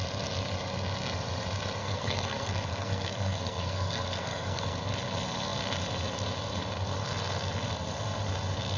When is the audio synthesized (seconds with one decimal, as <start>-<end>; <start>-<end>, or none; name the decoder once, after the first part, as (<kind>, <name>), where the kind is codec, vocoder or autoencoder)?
1.8-4.8 (codec, SNAC)